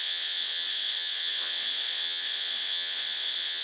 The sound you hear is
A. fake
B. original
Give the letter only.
A